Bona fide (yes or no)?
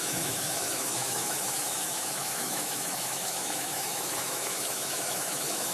no